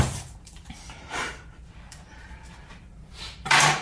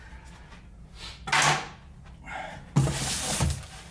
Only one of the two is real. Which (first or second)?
second